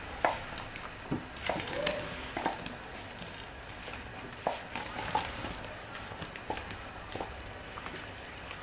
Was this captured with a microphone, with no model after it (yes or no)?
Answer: yes